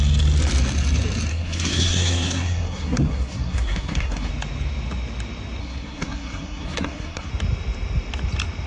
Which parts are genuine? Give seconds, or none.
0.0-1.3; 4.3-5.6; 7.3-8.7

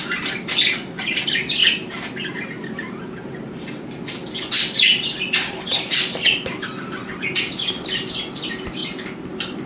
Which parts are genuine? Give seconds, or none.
0.0-9.7

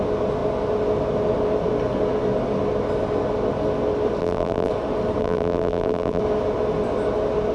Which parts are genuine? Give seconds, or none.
0.0-4.2; 4.7-5.2; 6.2-7.5

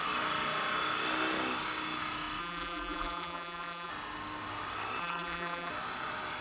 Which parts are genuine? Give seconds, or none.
0.0-2.4; 3.9-5.0; 5.7-6.4

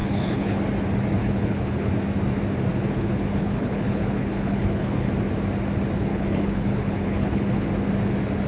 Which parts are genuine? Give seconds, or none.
0.6-1.2; 1.9-2.7; 5.1-6.1; 7.7-8.5

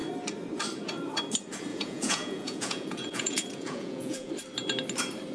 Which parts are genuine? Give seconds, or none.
0.0-1.7; 4.3-5.3

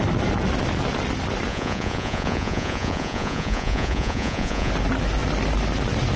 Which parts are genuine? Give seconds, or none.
0.0-1.5; 4.7-6.2